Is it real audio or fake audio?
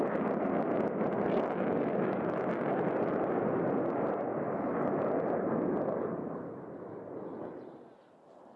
real